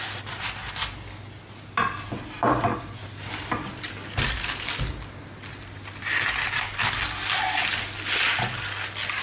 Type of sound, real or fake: real